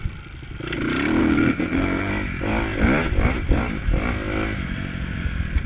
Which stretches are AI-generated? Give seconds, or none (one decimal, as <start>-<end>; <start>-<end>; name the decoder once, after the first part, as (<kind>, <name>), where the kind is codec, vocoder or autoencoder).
1.2-2.1 (codec, SNAC)